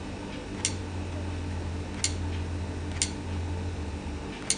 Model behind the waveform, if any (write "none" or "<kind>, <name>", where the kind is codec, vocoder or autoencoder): none